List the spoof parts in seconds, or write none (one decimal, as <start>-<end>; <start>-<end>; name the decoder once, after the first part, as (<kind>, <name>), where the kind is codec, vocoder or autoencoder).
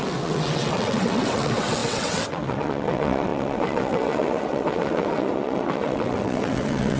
0.0-7.0 (vocoder, WaveNeXt)